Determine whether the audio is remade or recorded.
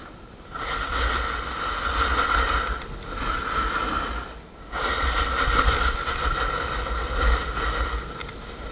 recorded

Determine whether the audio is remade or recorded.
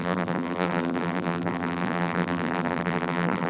remade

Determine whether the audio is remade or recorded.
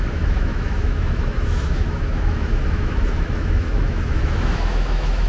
remade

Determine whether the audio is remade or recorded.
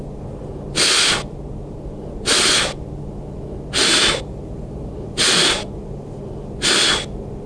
recorded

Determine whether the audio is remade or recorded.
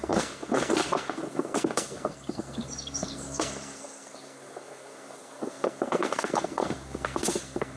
remade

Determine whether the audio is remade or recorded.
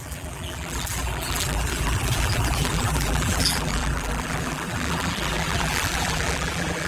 remade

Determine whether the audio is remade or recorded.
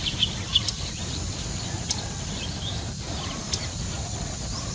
remade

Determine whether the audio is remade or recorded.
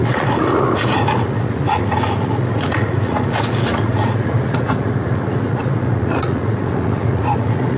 remade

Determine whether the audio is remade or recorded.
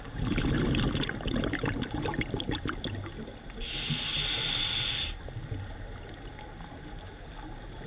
recorded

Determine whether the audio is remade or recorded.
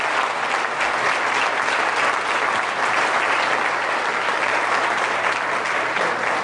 recorded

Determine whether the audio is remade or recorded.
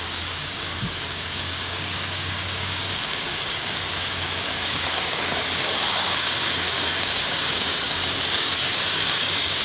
remade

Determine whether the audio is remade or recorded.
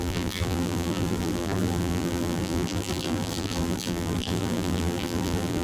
remade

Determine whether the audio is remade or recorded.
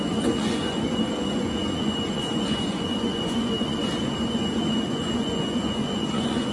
remade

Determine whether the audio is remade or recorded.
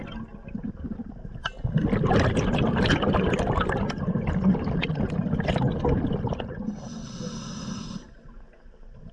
recorded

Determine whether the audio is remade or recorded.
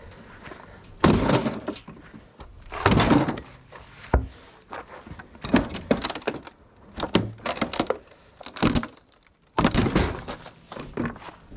recorded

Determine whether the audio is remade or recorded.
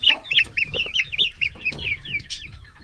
remade